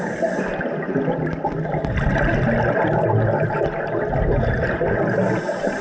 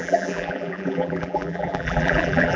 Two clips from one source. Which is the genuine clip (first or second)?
first